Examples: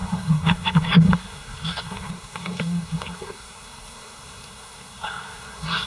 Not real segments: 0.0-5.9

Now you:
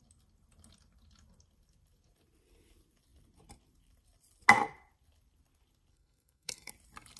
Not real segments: 5.9-6.7